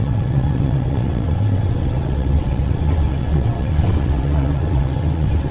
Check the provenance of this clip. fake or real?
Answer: fake